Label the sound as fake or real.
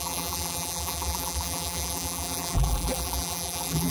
fake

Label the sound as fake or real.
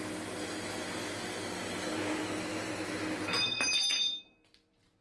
real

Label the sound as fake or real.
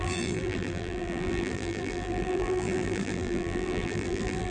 fake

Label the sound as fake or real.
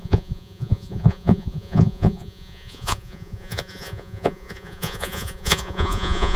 fake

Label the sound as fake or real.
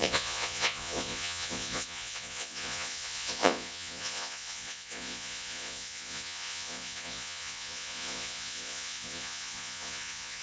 fake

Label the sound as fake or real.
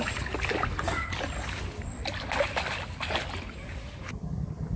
real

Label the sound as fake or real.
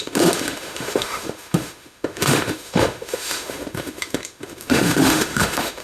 fake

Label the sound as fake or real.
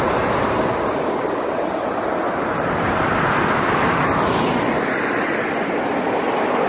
real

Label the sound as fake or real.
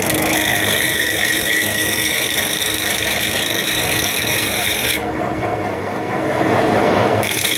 fake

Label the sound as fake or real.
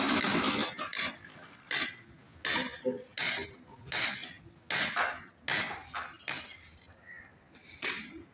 real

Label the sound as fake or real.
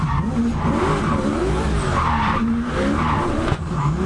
real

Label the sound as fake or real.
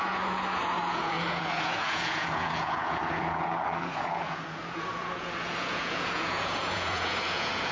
fake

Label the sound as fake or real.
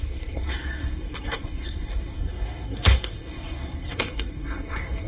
fake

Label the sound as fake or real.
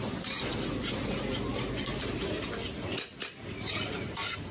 real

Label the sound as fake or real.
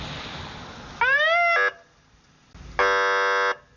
real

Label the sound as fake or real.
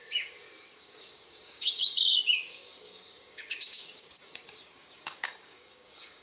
fake